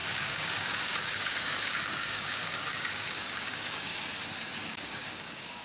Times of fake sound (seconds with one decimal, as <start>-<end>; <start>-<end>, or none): 0.0-3.9; 4.7-5.6